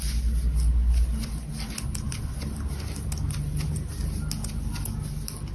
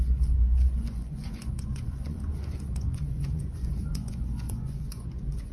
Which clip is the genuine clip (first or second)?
first